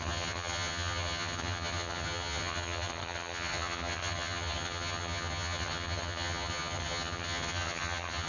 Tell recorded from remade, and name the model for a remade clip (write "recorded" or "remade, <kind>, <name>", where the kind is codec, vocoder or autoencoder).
remade, vocoder, HiFi-GAN